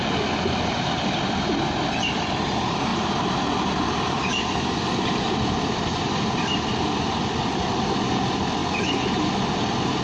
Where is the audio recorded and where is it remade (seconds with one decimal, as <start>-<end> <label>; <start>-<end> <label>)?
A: 0.0-5.9 recorded; 5.9-6.8 remade; 6.8-10.0 recorded